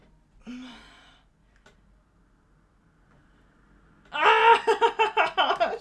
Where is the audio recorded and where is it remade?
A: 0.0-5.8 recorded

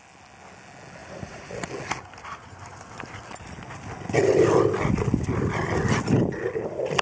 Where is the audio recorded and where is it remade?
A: 0.0-1.0 recorded; 1.0-1.7 remade; 1.7-7.0 recorded

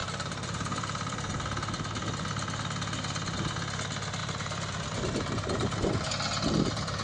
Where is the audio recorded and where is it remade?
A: 0.0-1.3 remade; 1.3-4.2 recorded; 4.2-6.1 remade; 6.1-7.0 recorded

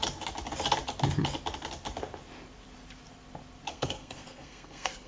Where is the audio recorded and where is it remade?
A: 0.0-3.7 recorded; 3.7-5.1 remade

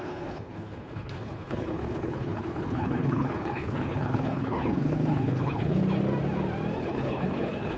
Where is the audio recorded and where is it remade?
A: 0.0-5.8 remade; 5.8-6.8 recorded; 6.8-7.8 remade

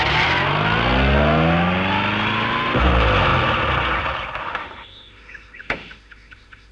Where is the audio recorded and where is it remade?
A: 0.0-4.4 recorded; 4.4-6.7 remade